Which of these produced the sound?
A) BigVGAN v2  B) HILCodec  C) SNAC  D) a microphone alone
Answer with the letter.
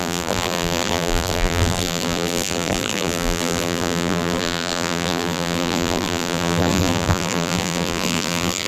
A